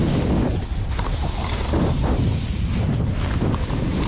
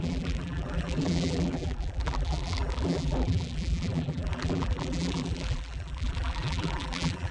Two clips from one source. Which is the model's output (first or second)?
second